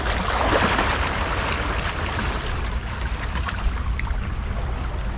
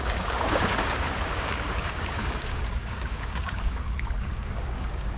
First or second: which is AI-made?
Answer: second